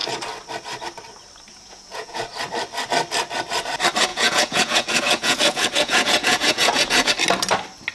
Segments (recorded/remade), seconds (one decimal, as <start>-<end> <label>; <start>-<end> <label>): 0.0-1.5 recorded; 1.5-2.2 remade; 2.2-4.1 recorded; 4.1-7.1 remade; 7.1-7.9 recorded